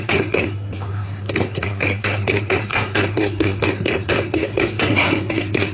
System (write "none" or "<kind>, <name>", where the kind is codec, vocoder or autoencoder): codec, SNAC